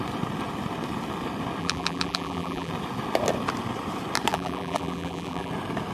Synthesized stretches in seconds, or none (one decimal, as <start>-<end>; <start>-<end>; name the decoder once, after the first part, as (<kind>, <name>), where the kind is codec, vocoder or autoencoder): 1.6-2.7 (vocoder, BigVGAN v2); 4.3-5.5